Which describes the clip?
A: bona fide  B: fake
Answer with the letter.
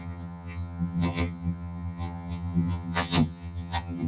B